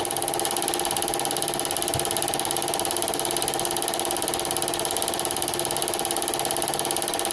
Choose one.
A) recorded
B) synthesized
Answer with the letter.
A